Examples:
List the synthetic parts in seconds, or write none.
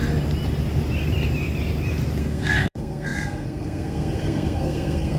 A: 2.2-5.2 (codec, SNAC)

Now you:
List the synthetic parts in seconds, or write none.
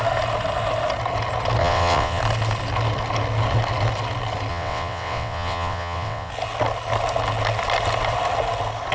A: 1.6-2.2 (vocoder, WaveNeXt); 4.5-6.3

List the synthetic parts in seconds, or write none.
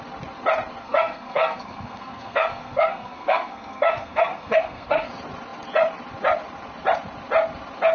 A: 0.8-5.1 (codec, SNAC)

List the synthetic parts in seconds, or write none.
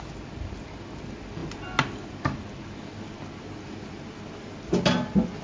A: none